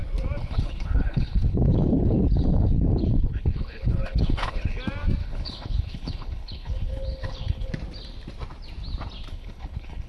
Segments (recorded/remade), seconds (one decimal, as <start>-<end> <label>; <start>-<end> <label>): 0.0-0.4 recorded; 0.4-4.8 remade; 4.8-5.2 recorded; 5.2-7.7 remade; 7.7-9.3 recorded; 9.3-10.1 remade